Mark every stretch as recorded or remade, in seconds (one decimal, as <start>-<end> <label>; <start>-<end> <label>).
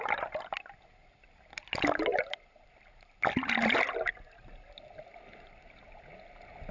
0.0-6.7 recorded